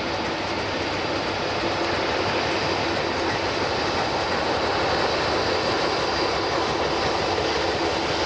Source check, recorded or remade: recorded